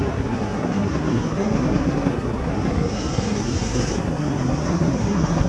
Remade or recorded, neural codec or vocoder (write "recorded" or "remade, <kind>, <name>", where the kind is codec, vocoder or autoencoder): remade, codec, SNAC